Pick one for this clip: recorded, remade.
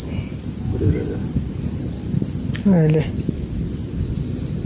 recorded